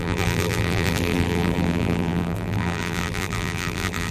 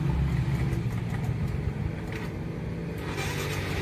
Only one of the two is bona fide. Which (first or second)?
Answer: second